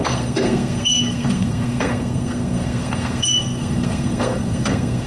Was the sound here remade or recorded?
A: remade